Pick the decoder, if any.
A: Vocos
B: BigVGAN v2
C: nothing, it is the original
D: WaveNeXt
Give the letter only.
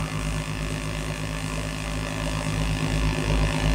C